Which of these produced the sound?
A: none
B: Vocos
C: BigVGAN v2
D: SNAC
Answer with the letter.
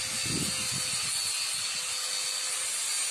A